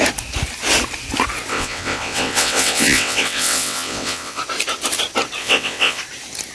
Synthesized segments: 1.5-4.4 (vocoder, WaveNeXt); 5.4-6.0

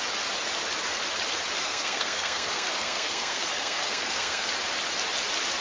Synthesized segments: 1.6-4.5 (codec, SNAC)

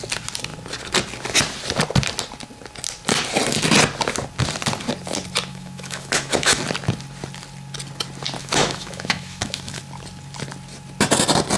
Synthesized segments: 5.5-6.6 (autoencoder, DAC-VAE); 8.4-9.8

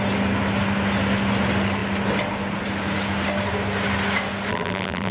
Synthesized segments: 4.5-5.1 (vocoder, BigVGAN v2)

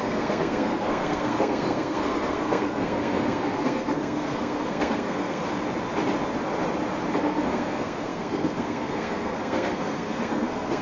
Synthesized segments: 0.0-5.4 (codec, SNAC); 7.2-10.8

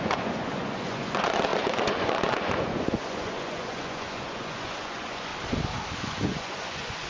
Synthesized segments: 0.0-5.3 (vocoder, Vocos); 6.0-7.1

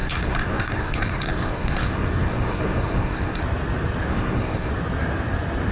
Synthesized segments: 0.0-3.4 (codec, SNAC); 4.1-4.7